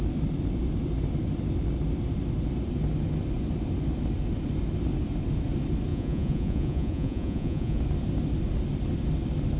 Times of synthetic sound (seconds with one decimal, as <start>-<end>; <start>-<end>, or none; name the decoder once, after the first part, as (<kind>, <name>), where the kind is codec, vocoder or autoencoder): 5.9-7.8 (vocoder, Vocos)